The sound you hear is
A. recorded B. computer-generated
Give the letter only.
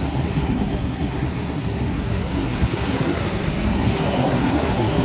B